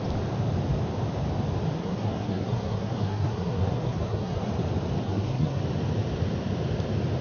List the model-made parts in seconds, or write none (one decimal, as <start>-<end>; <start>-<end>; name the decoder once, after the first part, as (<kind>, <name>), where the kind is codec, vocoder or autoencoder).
1.8-4.5 (codec, SNAC); 5.0-5.6